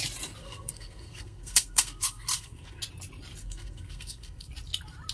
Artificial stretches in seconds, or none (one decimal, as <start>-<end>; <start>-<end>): 0.4-2.8; 3.4-4.5